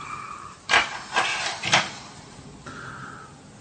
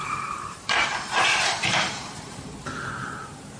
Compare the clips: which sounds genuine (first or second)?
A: first